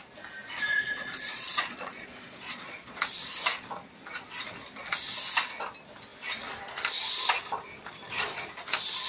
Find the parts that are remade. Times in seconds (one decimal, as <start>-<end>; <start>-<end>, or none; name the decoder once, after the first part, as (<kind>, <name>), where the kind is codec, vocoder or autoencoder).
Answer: 0.7-3.0 (vocoder, Vocos)

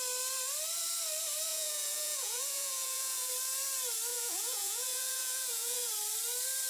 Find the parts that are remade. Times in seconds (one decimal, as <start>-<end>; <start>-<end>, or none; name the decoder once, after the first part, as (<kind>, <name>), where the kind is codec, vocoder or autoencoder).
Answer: 1.5-3.3 (vocoder, Vocos); 4.1-5.9

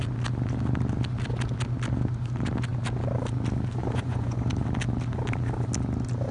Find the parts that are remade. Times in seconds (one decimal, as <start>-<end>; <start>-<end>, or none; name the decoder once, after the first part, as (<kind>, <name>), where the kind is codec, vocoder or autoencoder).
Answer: 3.8-4.5 (vocoder, Vocos)

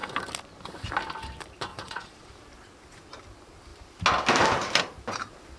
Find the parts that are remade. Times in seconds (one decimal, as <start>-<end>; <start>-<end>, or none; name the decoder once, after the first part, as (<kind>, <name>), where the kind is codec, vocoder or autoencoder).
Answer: 1.7-2.3 (vocoder, Vocos)